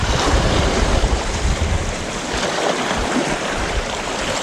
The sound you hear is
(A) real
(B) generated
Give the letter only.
B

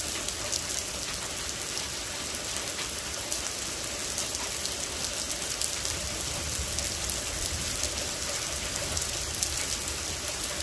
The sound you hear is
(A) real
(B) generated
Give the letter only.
A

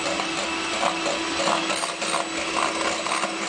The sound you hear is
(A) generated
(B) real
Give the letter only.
B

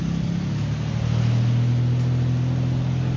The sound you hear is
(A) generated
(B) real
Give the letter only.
B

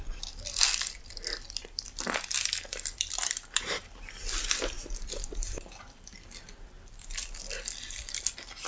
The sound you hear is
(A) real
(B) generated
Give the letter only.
B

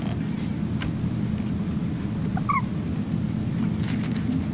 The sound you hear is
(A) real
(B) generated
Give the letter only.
A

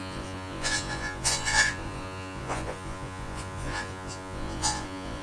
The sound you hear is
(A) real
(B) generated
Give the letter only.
B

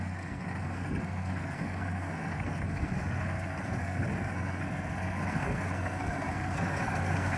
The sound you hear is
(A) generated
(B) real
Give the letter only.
A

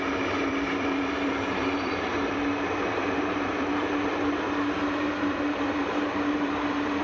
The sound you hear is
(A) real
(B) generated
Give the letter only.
B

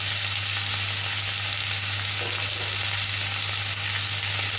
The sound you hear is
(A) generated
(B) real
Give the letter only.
B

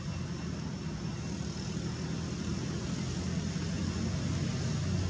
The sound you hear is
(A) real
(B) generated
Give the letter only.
A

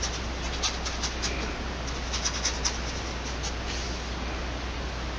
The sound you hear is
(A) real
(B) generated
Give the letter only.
A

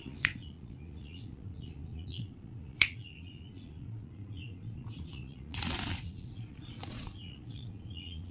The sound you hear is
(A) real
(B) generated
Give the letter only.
B